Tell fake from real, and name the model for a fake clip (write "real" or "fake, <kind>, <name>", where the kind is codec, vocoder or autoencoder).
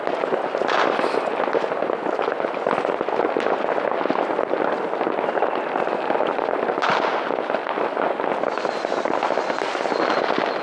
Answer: real